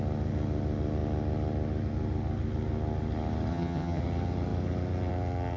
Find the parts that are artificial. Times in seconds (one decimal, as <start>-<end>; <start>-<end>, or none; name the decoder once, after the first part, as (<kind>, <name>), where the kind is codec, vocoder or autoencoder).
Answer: 3.5-4.0 (vocoder, HiFi-GAN)